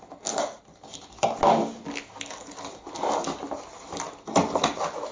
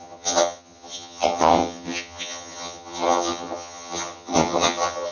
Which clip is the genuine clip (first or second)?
first